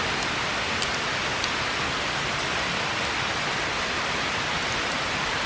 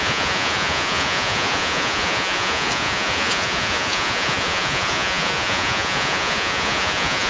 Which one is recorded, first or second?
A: first